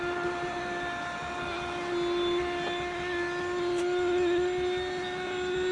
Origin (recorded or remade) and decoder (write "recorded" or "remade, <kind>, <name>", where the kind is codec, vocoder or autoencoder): recorded